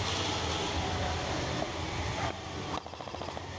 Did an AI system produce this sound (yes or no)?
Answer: no